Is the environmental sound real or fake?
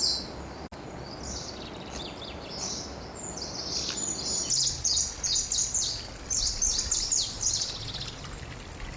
real